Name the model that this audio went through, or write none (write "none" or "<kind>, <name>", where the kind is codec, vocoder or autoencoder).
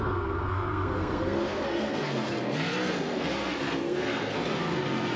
codec, SNAC